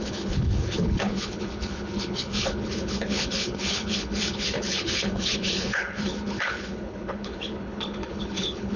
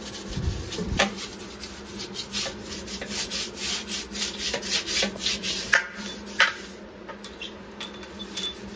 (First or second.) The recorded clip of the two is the second